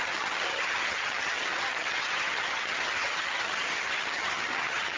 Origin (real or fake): fake